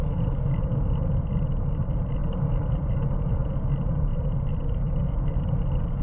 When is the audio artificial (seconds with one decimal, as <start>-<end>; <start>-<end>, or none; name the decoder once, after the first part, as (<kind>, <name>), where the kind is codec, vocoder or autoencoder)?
none